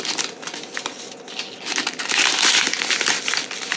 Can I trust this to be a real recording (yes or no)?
yes